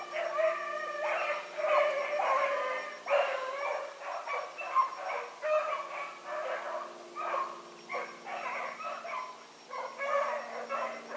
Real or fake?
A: real